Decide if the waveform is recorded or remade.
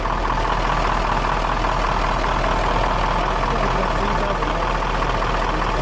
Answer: recorded